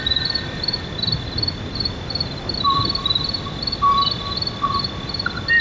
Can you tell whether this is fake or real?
real